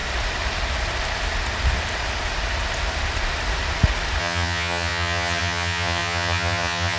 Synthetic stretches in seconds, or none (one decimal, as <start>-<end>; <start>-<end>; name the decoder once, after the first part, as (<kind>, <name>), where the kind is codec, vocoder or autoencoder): 4.2-7.0 (vocoder, HiFi-GAN)

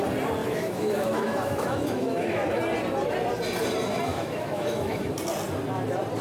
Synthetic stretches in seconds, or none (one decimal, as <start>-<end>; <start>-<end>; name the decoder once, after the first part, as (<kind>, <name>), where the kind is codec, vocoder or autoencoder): 0.4-2.6 (autoencoder, DAC-VAE); 4.1-5.1

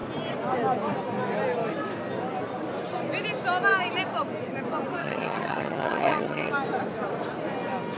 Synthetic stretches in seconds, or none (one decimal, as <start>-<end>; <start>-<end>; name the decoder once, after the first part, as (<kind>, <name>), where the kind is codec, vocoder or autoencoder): 5.0-6.5 (vocoder, HiFi-GAN)

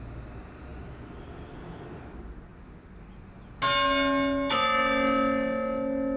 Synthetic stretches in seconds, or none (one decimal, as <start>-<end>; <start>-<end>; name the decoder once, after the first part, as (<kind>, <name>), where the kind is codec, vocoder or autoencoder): none

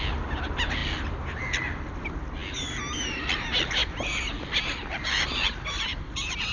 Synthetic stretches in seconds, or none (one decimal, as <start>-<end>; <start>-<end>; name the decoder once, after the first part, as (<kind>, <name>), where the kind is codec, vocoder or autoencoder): none